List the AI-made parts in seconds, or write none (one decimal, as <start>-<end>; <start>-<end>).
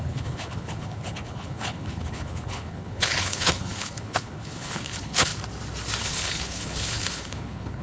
0.0-5.3; 6.0-7.8